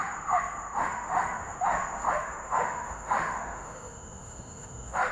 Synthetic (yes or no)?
yes